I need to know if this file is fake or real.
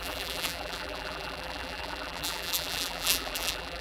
fake